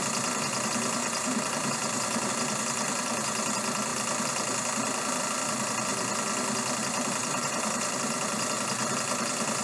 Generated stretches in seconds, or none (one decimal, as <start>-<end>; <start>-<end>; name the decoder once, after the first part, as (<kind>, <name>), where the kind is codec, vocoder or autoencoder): 1.0-2.3 (vocoder, BigVGAN v2); 7.2-8.4